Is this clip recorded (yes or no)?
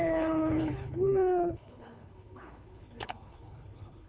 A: no